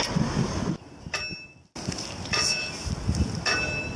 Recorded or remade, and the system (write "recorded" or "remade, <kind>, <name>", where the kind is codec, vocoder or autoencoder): recorded